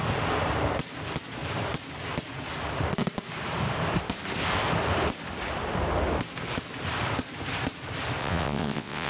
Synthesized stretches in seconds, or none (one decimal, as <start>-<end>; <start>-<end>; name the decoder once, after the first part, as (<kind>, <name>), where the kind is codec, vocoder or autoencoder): 8.2-9.1 (vocoder, WaveNeXt)